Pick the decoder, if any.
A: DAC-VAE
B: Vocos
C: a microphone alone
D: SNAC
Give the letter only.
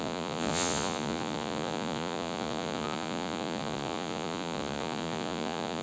B